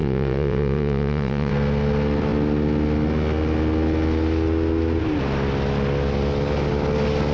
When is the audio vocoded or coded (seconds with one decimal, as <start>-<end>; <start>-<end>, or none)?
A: 0.0-1.5